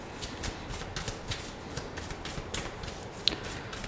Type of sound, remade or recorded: recorded